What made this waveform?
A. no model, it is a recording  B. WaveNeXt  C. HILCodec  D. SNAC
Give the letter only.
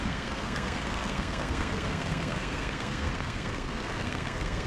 D